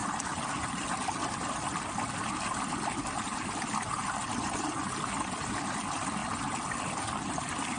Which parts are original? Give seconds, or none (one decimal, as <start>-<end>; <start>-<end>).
0.0-7.8